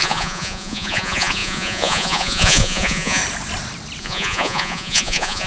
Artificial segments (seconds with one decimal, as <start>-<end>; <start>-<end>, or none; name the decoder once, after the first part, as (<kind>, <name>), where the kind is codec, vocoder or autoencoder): 0.0-3.2 (vocoder, Vocos); 4.0-5.5